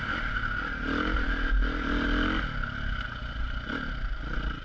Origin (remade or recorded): recorded